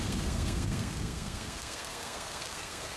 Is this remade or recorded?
remade